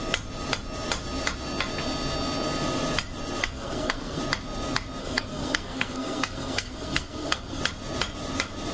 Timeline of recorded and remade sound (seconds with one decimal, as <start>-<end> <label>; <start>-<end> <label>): 0.0-3.4 recorded; 3.4-4.2 remade; 4.2-5.0 recorded; 5.0-7.6 remade; 7.6-8.7 recorded

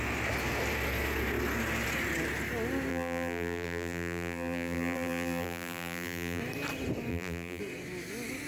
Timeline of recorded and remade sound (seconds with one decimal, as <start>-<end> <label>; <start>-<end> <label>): 0.0-2.9 recorded; 2.9-6.4 remade; 6.4-7.1 recorded; 7.1-7.6 remade; 7.6-8.5 recorded